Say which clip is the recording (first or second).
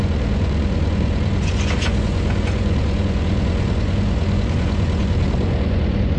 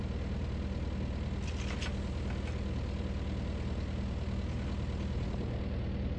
second